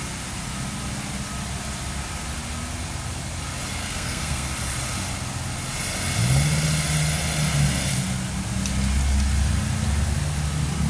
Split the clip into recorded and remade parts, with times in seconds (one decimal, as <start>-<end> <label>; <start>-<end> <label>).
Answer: 0.0-3.8 recorded; 3.8-4.5 remade; 4.5-10.9 recorded